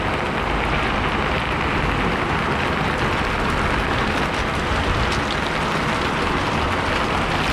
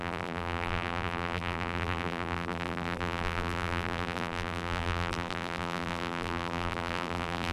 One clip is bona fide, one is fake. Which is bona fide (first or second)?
first